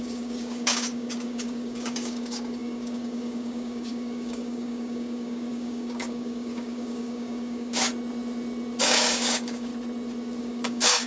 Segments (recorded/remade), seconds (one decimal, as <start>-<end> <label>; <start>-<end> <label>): 0.0-7.9 remade; 7.9-8.8 recorded; 8.8-9.7 remade; 9.7-10.4 recorded; 10.4-11.1 remade